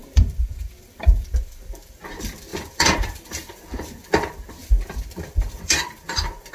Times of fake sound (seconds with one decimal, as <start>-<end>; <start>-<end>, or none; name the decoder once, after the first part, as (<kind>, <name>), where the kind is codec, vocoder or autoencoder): 0.0-2.0 (vocoder, BigVGAN v2); 2.5-3.6; 4.6-6.5